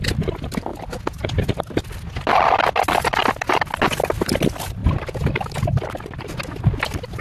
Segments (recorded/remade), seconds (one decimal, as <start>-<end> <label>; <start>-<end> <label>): 0.0-7.2 recorded